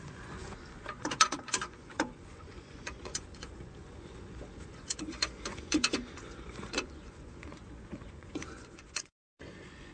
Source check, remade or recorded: remade